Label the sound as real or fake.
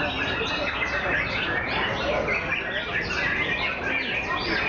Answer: real